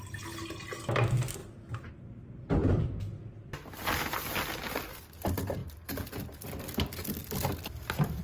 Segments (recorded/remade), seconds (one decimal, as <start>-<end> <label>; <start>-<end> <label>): 0.0-1.4 recorded; 1.4-1.9 remade; 1.9-2.6 recorded; 2.6-3.3 remade; 3.3-5.6 recorded; 5.6-6.1 remade; 6.1-8.2 recorded